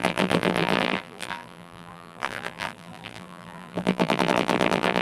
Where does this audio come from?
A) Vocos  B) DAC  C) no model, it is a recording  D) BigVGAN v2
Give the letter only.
D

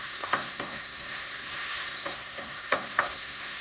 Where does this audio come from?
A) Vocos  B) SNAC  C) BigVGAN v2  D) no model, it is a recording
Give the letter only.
B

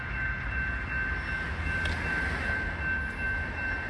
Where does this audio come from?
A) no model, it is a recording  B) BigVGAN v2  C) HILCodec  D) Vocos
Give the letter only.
A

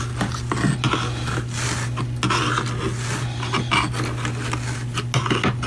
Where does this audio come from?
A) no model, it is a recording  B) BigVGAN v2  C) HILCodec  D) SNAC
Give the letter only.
A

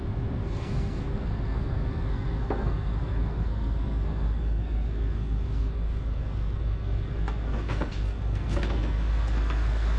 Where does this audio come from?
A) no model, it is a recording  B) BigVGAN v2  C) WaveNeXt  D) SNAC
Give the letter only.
D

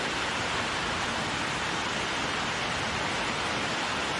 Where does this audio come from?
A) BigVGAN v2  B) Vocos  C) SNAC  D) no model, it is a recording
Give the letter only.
D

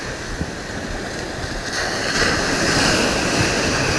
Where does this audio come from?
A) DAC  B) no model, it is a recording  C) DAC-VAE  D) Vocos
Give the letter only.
B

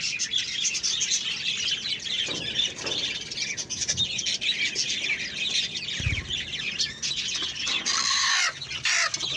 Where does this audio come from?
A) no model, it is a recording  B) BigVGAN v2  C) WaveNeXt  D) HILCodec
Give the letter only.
A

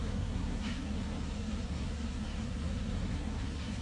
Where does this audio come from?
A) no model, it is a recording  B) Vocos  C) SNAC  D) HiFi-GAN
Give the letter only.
C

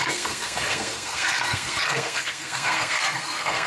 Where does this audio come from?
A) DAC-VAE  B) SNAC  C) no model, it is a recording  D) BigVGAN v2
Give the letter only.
B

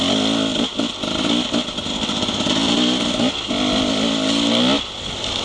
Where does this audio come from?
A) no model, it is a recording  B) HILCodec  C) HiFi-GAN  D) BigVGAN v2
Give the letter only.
A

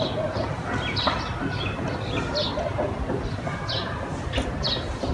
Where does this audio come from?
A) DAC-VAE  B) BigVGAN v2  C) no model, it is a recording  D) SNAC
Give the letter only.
C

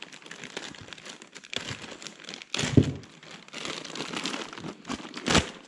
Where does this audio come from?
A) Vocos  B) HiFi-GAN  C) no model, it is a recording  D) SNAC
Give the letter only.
C